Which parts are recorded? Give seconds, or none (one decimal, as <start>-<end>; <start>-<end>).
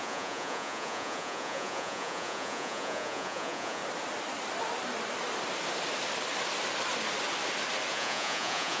3.8-7.9